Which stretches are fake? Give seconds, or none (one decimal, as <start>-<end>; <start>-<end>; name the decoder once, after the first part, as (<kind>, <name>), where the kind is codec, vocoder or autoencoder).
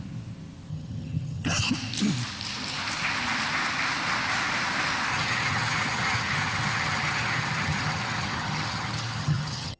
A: 0.7-1.6 (vocoder, HiFi-GAN); 5.1-9.8